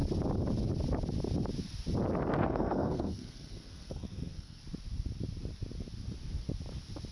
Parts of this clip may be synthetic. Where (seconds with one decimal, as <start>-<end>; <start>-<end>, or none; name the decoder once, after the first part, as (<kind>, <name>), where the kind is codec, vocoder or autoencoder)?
2.4-4.6 (codec, SNAC)